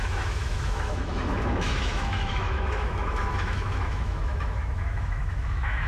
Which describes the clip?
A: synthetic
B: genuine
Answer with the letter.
A